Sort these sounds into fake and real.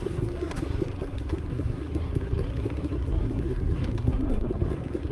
fake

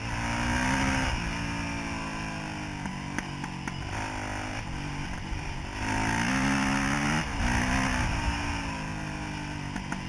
real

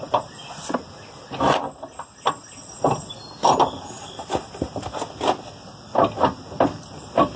real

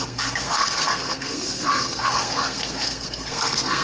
fake